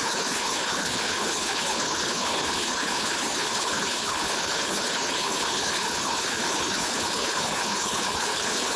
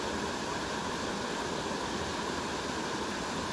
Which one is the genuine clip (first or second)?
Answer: second